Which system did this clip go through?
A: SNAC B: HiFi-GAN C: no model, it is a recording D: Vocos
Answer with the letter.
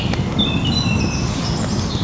C